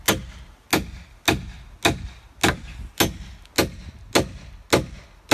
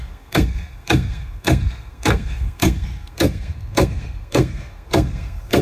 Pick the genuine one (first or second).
first